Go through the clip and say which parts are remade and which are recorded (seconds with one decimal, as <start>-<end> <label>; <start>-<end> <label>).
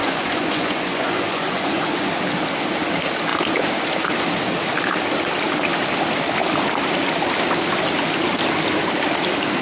0.0-2.1 remade; 2.1-9.6 recorded